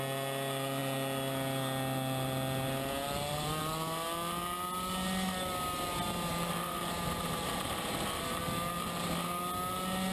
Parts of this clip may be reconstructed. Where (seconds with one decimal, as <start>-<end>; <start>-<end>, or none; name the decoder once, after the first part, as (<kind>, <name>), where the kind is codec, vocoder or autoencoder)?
6.3-8.4 (vocoder, BigVGAN v2)